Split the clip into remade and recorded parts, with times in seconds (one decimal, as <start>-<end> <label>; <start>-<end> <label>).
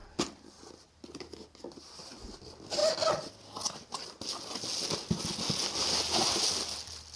0.0-7.2 recorded